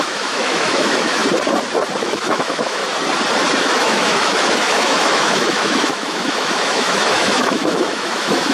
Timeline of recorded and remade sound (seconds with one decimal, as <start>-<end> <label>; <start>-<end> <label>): 0.0-1.2 remade; 1.2-2.0 recorded; 2.0-2.8 remade; 2.8-3.6 recorded; 3.6-8.5 remade